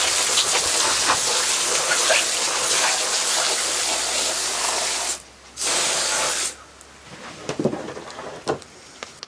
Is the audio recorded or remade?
recorded